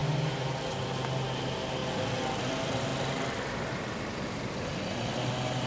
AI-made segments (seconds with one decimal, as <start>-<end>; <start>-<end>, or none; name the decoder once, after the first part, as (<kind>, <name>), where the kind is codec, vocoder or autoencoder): none